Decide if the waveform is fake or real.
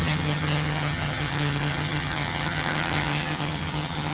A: fake